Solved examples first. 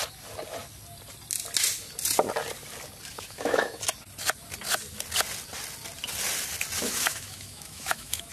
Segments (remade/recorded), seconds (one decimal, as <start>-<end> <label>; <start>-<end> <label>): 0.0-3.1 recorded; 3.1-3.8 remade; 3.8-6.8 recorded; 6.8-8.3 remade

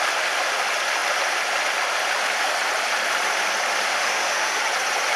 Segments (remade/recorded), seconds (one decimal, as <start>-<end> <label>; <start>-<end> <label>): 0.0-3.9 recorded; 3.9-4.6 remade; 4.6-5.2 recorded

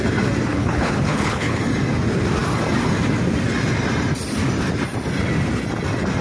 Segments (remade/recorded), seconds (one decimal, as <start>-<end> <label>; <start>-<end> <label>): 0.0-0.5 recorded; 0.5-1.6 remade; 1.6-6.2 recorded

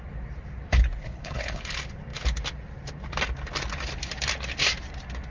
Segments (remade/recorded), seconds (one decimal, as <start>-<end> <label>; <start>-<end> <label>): 0.0-1.0 recorded; 1.0-1.6 remade; 1.6-5.3 recorded